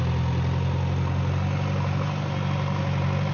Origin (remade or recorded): recorded